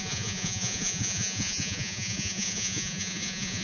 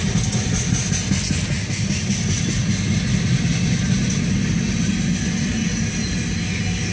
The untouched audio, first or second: second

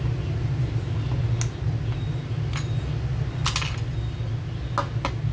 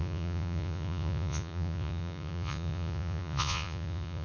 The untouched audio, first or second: first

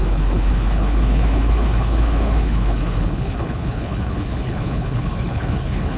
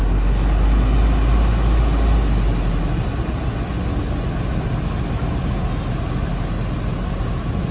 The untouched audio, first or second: second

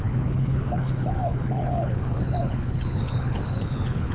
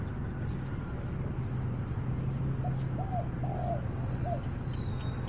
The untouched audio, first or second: second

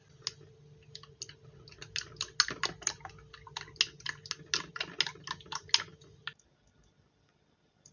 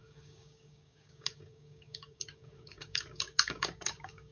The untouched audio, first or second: first